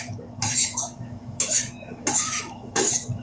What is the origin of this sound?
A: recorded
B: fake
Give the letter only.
B